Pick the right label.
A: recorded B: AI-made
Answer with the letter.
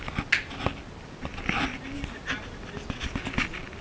A